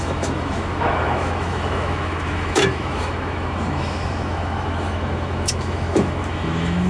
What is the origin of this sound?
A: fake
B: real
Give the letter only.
A